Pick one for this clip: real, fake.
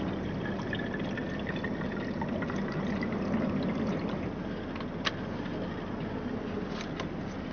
real